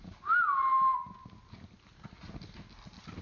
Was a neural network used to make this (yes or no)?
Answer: no